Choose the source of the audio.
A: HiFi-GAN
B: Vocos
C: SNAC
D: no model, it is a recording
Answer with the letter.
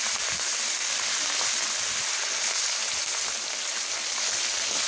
D